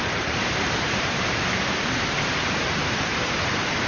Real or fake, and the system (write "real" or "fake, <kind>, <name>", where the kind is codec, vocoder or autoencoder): fake, vocoder, BigVGAN v2